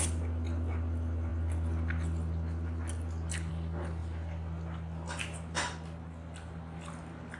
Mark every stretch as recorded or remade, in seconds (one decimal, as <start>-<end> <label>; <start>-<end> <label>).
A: 0.0-7.4 recorded